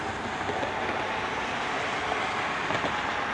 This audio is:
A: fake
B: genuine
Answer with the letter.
B